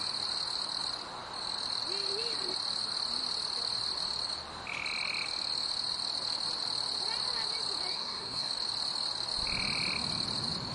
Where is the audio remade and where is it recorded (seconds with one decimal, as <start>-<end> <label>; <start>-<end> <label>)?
0.0-7.9 recorded; 7.9-8.5 remade; 8.5-10.7 recorded